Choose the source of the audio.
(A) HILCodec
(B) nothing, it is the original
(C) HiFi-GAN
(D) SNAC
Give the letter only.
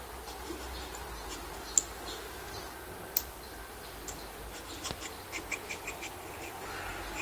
B